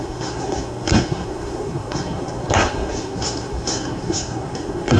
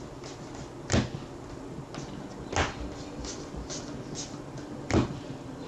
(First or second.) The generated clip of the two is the first